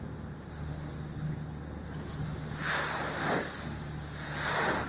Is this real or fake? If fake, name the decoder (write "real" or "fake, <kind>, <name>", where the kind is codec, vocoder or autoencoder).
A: real